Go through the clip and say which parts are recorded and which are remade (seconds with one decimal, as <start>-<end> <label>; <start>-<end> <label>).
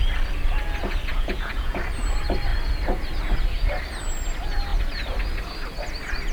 0.0-1.1 recorded; 1.1-1.8 remade; 1.8-6.3 recorded